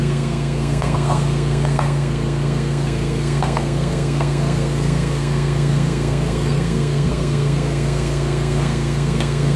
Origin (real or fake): fake